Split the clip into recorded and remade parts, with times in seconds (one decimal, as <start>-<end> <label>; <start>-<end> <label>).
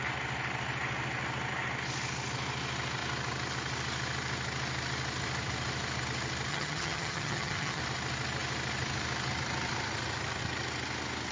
0.0-6.5 recorded; 6.5-7.8 remade; 7.8-11.3 recorded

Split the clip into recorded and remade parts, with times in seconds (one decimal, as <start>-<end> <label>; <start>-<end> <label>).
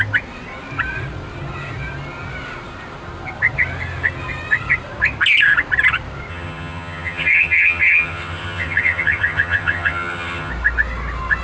0.0-6.3 recorded; 6.3-10.5 remade; 10.5-11.4 recorded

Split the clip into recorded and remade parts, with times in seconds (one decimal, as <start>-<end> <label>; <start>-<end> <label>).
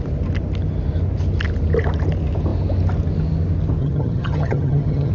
0.0-3.8 recorded; 3.8-5.1 remade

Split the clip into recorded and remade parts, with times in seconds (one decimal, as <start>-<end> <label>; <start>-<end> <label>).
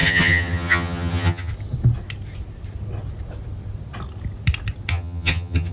0.0-1.5 remade; 1.5-4.9 recorded; 4.9-5.7 remade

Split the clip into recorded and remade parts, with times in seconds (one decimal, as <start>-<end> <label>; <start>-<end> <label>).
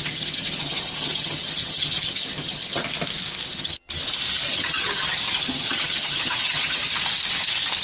0.0-2.8 remade; 2.8-3.5 recorded; 3.5-4.0 remade; 4.0-4.5 recorded; 4.5-6.8 remade; 6.8-7.8 recorded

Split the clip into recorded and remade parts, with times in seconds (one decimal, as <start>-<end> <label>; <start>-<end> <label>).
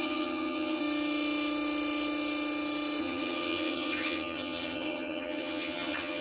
0.0-0.8 remade; 0.8-3.0 recorded; 3.0-6.2 remade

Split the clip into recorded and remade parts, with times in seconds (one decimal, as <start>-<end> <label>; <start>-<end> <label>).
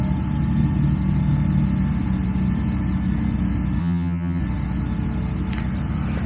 0.0-3.8 recorded; 3.8-4.4 remade; 4.4-6.3 recorded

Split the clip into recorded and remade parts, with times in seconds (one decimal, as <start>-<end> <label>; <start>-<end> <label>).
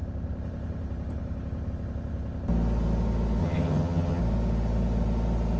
0.0-3.4 recorded; 3.4-4.2 remade; 4.2-5.6 recorded